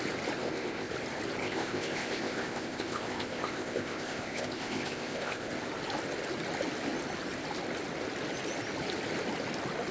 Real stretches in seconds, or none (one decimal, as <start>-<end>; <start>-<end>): 0.0-0.4; 0.9-1.4; 5.5-9.9